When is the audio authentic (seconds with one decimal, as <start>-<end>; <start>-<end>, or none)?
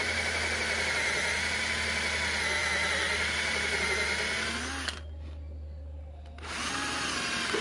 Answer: 0.0-7.6